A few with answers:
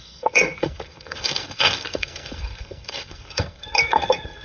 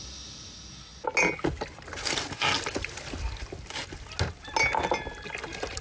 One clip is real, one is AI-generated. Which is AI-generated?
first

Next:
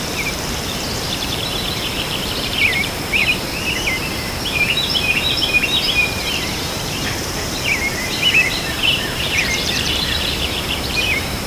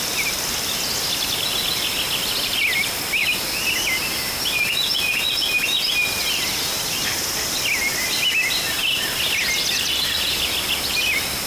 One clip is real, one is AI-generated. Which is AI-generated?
first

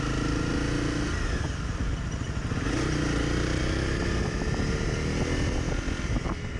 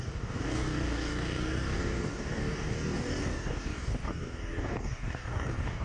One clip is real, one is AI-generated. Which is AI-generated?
second